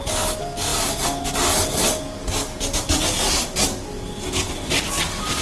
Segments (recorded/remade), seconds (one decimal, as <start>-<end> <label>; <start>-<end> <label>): 0.0-5.4 recorded